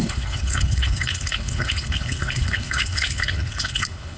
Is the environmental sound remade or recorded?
remade